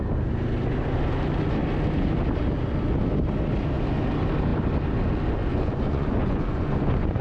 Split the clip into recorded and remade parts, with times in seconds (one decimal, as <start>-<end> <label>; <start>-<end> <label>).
0.0-5.5 recorded; 5.5-7.2 remade